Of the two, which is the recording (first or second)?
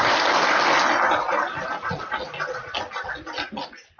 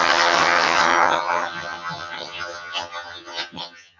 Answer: first